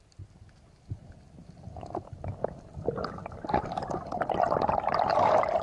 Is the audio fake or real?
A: fake